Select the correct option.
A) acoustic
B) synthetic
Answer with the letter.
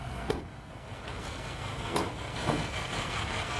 B